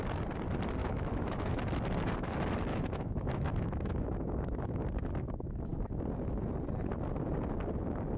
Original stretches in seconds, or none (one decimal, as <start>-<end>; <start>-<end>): 0.0-0.8; 1.5-2.7; 4.8-8.2